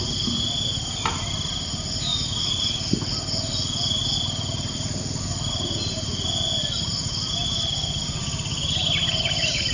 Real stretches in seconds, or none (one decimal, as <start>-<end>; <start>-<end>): 0.0-9.7